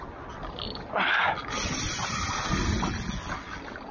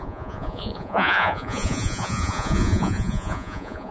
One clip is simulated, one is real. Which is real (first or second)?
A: first